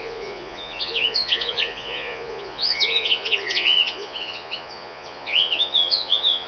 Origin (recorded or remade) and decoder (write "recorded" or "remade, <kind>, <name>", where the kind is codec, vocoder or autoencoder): remade, vocoder, Vocos